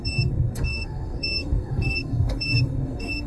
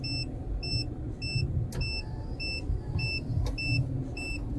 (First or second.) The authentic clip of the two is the second